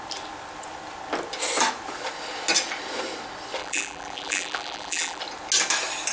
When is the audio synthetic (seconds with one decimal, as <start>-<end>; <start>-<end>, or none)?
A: 3.6-5.2

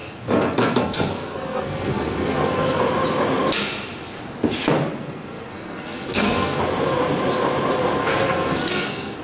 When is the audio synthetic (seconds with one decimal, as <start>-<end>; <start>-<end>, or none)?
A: 0.0-2.8; 5.0-6.6; 8.0-9.2

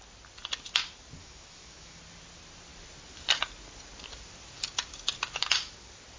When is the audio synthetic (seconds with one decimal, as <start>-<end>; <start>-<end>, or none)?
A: 1.2-2.0

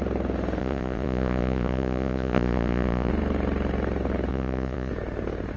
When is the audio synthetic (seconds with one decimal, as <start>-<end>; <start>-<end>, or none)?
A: 0.6-3.1; 4.3-4.9

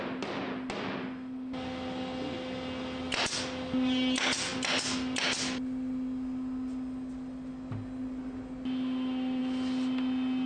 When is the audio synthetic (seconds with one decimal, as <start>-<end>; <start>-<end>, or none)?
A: none